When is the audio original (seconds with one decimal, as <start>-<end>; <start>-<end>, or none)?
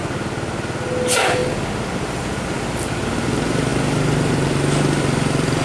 0.0-5.6